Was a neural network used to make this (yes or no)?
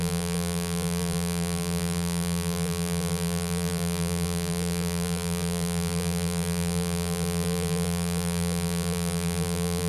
yes